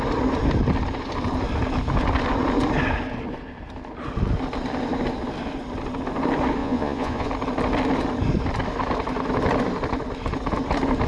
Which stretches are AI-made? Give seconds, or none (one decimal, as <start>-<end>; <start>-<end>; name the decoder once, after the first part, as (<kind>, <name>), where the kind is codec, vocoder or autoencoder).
6.6-7.3 (vocoder, Vocos)